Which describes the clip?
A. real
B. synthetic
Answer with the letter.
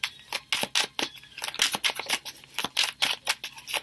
A